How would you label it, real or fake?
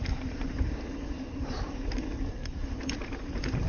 fake